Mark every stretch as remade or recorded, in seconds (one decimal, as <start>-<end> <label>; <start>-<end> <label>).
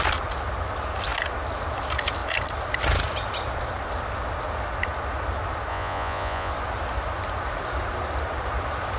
0.0-5.7 recorded; 5.7-6.5 remade; 6.5-9.0 recorded